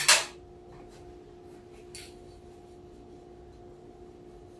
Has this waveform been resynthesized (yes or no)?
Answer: no